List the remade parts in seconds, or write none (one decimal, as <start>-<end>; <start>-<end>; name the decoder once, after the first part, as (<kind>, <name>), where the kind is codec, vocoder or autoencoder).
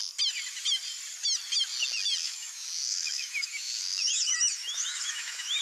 2.2-5.6 (autoencoder, DAC-VAE)